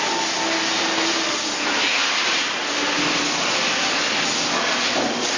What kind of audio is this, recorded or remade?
recorded